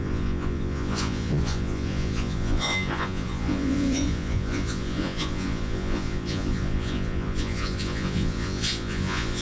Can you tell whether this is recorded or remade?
remade